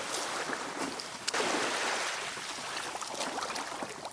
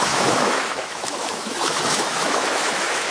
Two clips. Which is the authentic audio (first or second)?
first